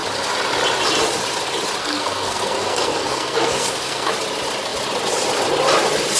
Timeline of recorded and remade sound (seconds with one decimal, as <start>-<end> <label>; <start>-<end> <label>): 0.0-1.8 recorded; 1.8-4.1 remade; 4.1-6.2 recorded